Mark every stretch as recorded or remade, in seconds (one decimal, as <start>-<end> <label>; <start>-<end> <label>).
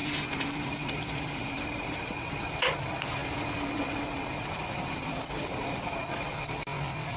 0.0-2.1 remade; 2.1-7.2 recorded